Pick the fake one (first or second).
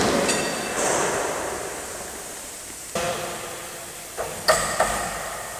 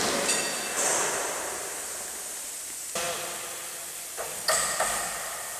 first